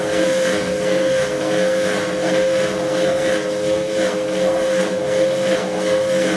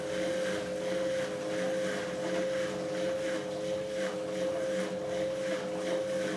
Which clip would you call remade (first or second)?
first